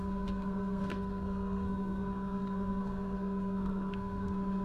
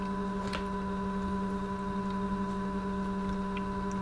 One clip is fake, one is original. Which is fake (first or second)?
first